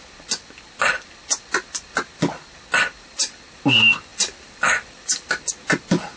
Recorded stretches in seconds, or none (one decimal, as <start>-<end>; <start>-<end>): 0.0-4.1; 5.3-6.2